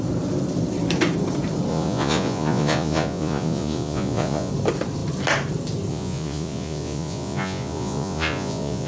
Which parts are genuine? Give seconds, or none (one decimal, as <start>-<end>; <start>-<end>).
0.0-1.7; 4.5-5.9

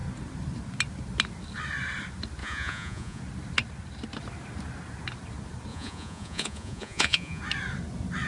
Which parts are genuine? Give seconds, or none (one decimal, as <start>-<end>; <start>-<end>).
0.0-2.4; 3.2-5.7; 7.4-8.3

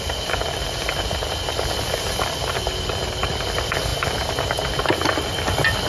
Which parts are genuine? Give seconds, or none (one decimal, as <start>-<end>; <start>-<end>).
0.0-5.9

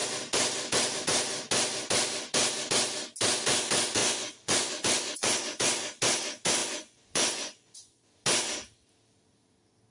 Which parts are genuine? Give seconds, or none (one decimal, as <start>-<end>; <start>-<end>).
0.0-4.0; 5.6-6.6; 8.2-9.9

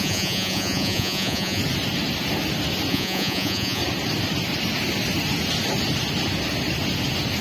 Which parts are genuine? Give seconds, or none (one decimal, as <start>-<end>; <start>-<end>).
1.6-2.9; 3.8-7.4